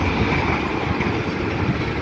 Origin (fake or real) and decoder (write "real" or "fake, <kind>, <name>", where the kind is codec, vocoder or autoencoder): real